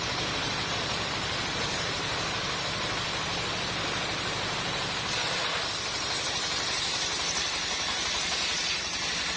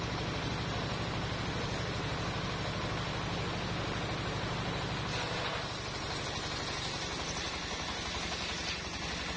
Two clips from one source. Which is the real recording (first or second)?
second